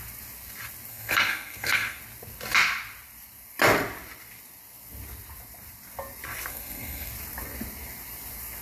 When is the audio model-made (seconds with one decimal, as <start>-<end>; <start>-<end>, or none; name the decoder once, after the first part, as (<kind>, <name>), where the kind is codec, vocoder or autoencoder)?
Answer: 0.9-2.0 (codec, SNAC); 6.5-7.1